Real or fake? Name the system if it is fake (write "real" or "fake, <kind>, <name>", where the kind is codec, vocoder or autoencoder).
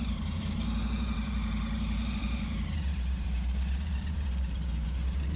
fake, vocoder, BigVGAN v2